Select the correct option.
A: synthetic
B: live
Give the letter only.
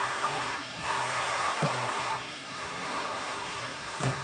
A